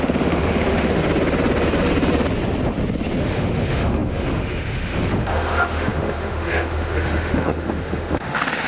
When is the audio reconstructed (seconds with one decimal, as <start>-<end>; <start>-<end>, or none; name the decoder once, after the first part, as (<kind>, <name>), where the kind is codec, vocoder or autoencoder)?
0.0-1.0 (autoencoder, DAC-VAE); 3.2-8.7